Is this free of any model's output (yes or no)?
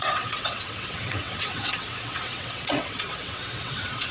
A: no